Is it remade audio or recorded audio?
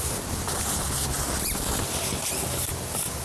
recorded